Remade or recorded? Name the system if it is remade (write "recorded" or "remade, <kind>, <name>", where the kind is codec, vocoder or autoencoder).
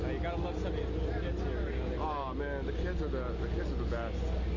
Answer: recorded